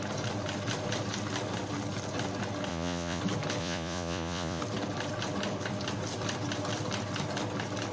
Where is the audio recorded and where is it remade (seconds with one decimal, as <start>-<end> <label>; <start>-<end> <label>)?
0.0-2.7 recorded; 2.7-3.2 remade; 3.2-3.6 recorded; 3.6-4.6 remade; 4.6-7.9 recorded